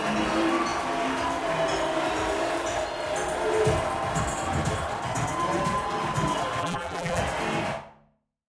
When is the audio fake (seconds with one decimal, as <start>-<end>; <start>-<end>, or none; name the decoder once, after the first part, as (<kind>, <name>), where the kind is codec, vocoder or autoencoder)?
6.6-7.2 (vocoder, BigVGAN v2)